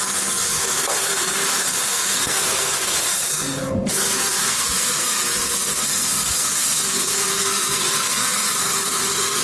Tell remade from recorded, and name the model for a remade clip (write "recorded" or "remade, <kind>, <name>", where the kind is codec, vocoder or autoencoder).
remade, codec, SNAC